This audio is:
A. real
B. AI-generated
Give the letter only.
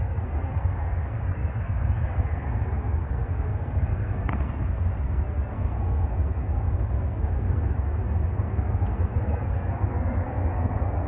B